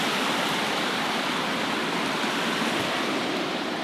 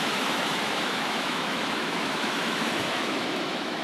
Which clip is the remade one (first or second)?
second